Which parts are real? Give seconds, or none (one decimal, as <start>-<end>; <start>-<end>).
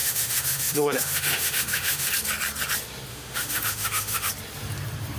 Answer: 2.1-3.1; 4.3-5.2